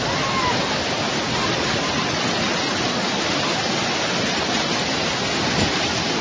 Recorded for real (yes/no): yes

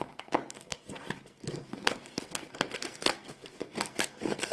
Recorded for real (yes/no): no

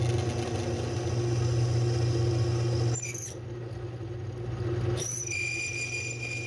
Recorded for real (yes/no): yes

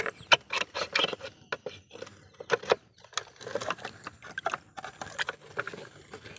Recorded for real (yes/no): yes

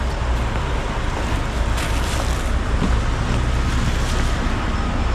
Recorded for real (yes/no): yes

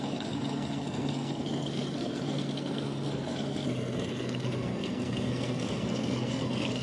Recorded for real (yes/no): no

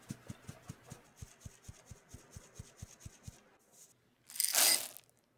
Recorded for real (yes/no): yes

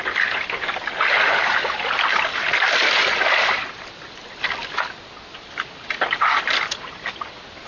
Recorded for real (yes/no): yes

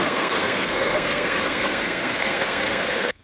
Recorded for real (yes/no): no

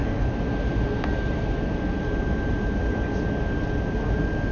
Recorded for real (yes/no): yes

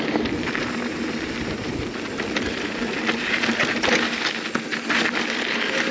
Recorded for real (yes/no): yes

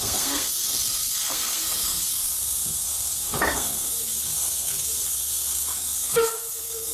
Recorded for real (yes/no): no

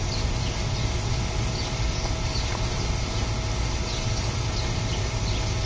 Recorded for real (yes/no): yes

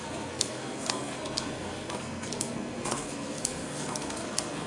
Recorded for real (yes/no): no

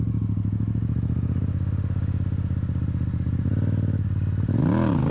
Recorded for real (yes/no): yes